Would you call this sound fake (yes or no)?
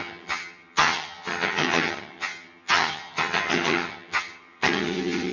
yes